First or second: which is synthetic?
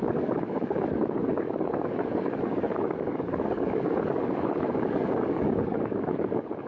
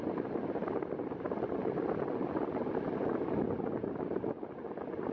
first